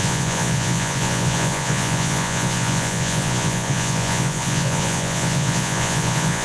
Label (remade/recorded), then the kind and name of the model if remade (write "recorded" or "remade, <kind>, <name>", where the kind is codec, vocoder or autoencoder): remade, vocoder, Vocos